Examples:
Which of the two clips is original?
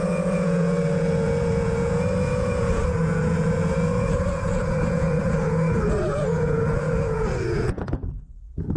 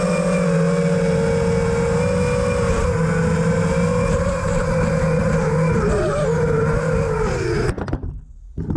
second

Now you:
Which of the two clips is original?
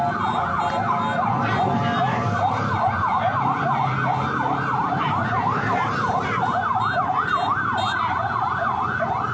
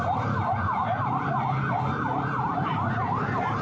first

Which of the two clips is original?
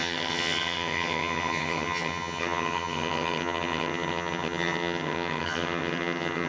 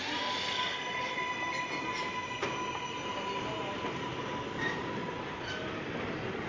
second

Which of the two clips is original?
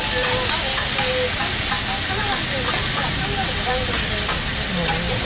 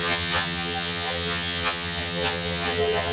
first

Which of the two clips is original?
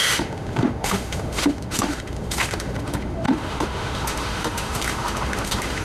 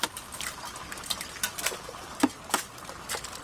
second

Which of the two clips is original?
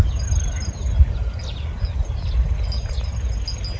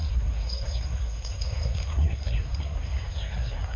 first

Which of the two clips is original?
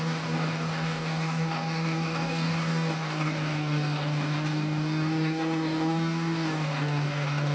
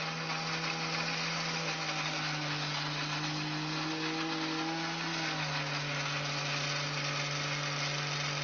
second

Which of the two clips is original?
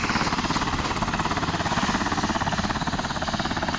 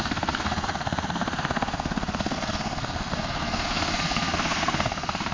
first